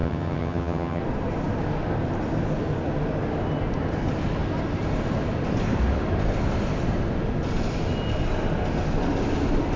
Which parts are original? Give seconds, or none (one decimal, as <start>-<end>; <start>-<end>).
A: 1.0-9.8